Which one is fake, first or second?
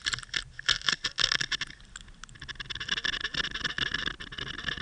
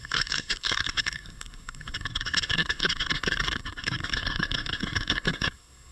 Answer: second